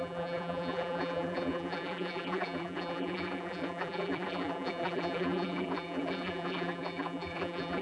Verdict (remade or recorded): remade